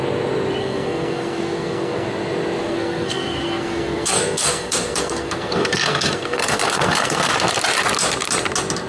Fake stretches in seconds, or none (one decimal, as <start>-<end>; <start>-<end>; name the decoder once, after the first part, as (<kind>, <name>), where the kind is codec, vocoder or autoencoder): 0.6-2.1 (codec, SNAC); 2.6-7.3